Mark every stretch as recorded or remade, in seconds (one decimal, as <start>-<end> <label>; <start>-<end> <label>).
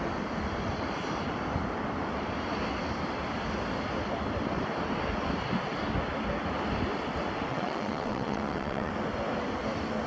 0.0-7.5 recorded; 7.5-8.9 remade; 8.9-10.1 recorded